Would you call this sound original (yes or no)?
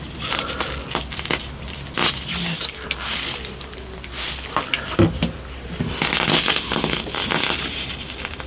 yes